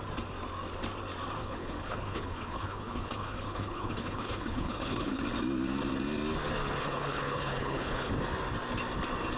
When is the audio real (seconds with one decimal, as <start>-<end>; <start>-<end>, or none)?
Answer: 0.0-1.4; 5.2-6.8; 8.1-9.4

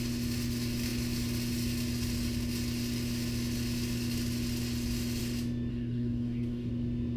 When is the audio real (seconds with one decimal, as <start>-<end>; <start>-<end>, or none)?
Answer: 0.0-5.7; 6.7-7.2

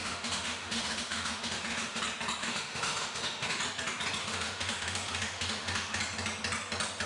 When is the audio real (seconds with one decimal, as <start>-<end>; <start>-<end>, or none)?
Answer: 2.0-2.4; 3.6-4.2; 6.0-7.1

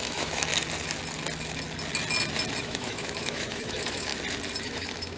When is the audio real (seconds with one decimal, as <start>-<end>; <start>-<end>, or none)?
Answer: 0.5-2.6; 4.1-4.6

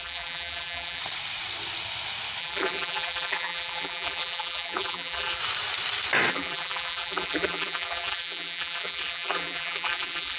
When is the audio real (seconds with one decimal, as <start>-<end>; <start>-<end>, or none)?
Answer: 1.0-2.4; 5.4-6.3

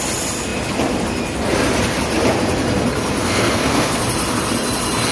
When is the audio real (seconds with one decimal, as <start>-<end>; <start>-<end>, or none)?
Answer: 0.0-3.2; 4.0-5.1

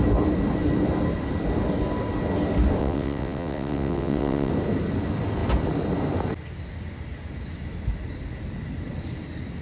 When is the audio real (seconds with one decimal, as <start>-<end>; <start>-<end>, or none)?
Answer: 0.0-2.8; 4.5-9.6